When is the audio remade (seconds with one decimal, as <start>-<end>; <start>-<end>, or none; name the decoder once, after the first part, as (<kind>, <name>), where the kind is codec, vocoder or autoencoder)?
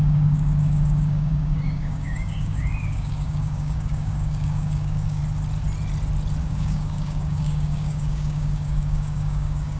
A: 0.0-5.2 (codec, DAC); 6.4-9.8